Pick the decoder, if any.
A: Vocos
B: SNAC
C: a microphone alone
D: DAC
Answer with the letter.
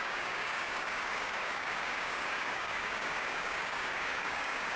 D